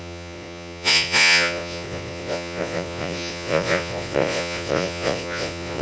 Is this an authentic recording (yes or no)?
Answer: no